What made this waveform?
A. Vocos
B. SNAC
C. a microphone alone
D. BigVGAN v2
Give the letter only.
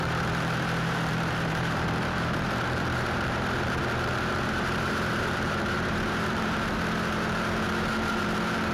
D